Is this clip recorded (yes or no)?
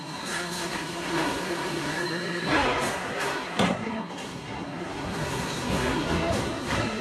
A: no